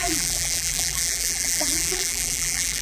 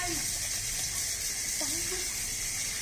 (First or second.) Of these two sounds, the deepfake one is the first